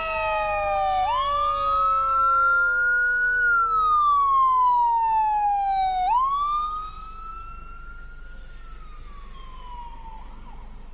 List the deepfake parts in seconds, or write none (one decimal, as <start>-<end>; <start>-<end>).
none